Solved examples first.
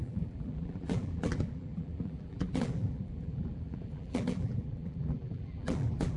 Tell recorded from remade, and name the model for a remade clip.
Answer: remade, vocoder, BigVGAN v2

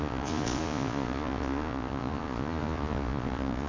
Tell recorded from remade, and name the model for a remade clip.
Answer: remade, vocoder, Vocos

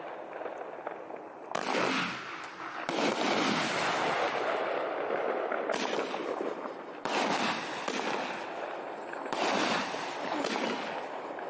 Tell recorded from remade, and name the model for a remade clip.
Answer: recorded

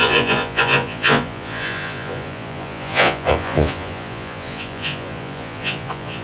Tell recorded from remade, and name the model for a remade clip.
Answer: remade, vocoder, Vocos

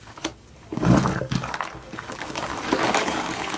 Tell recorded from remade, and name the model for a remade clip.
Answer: remade, codec, DAC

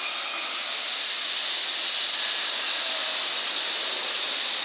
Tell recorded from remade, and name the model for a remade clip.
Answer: recorded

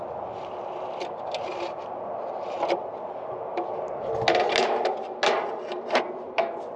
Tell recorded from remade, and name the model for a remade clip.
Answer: recorded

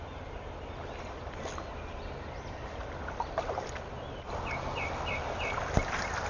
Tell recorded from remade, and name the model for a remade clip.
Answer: recorded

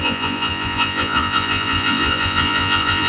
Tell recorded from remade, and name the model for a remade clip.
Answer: remade, vocoder, Vocos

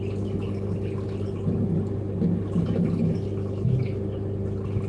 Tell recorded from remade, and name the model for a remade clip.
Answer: recorded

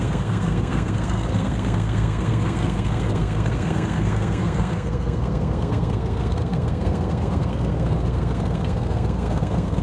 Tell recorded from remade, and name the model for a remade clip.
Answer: remade, codec, SNAC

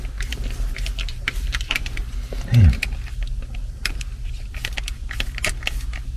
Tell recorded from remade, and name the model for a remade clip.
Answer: recorded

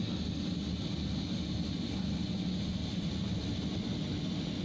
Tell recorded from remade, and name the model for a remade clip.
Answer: recorded